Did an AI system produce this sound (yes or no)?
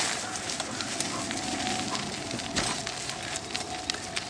no